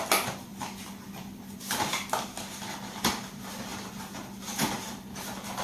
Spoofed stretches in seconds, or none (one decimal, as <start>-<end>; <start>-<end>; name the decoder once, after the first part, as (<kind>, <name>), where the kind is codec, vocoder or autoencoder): none